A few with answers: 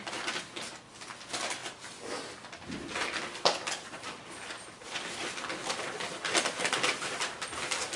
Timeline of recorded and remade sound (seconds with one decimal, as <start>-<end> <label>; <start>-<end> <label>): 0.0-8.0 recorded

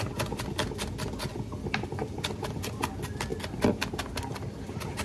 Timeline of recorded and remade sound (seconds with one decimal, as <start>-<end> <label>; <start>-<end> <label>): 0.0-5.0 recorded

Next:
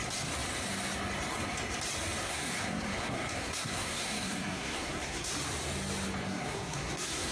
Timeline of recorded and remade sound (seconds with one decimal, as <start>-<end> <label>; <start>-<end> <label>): 0.0-2.2 recorded; 2.2-5.3 remade; 5.3-6.2 recorded; 6.2-7.3 remade

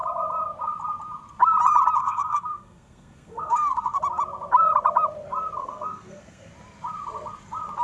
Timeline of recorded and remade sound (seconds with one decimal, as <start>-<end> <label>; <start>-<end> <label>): 0.0-2.0 recorded; 2.0-4.0 remade; 4.0-5.6 recorded; 5.6-6.5 remade; 6.5-7.8 recorded

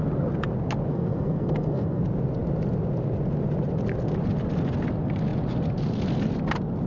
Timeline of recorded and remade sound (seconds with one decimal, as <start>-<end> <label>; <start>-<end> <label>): 0.0-0.9 recorded; 0.9-2.0 remade; 2.0-6.9 recorded

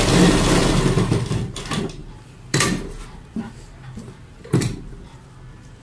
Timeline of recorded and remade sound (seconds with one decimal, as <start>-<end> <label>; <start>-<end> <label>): 0.0-5.8 recorded

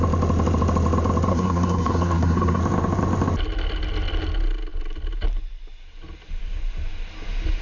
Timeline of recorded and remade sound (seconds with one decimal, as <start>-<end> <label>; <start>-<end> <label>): 0.0-1.3 recorded; 1.3-2.6 remade; 2.6-7.6 recorded

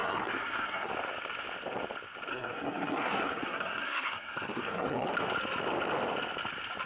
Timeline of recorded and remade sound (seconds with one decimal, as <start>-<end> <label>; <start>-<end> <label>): 0.0-0.9 remade; 0.9-2.3 recorded; 2.3-5.1 remade; 5.1-6.9 recorded